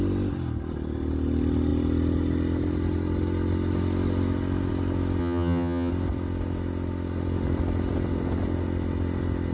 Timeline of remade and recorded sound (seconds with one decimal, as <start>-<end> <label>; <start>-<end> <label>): 0.0-5.2 recorded; 5.2-5.9 remade; 5.9-9.5 recorded